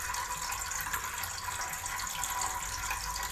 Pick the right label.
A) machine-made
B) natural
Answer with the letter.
B